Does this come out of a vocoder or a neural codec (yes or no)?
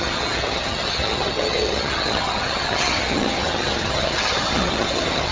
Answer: yes